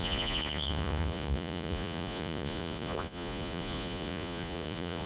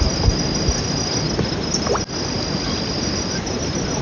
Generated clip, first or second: first